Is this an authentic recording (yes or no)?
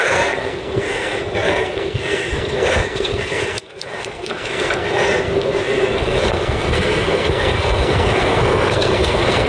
no